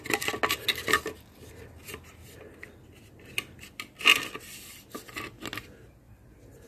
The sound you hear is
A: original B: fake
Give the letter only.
A